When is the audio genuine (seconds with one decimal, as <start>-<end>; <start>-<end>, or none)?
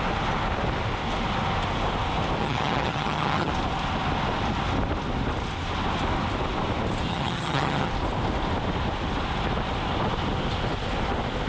0.0-2.4; 3.5-7.1; 7.9-11.5